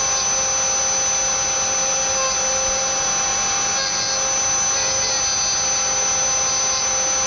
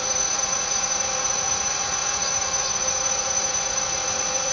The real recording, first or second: first